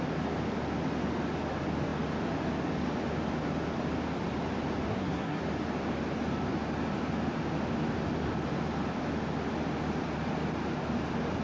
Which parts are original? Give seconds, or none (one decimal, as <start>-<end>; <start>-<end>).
0.0-4.9; 5.4-11.4